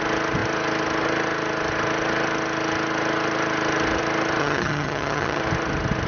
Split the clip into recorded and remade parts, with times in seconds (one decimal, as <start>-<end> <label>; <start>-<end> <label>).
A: 0.0-4.4 recorded; 4.4-5.4 remade; 5.4-6.1 recorded